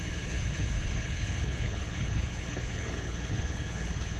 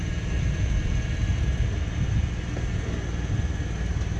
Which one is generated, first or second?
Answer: first